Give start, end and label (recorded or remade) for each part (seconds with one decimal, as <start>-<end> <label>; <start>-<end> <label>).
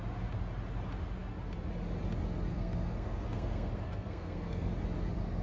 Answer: 0.0-2.5 recorded; 2.5-4.7 remade; 4.7-5.4 recorded